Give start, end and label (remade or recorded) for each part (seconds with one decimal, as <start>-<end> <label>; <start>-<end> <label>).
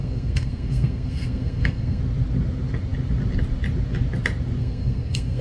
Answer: 0.0-2.0 remade; 2.0-4.6 recorded; 4.6-5.4 remade